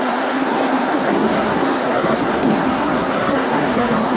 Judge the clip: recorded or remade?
remade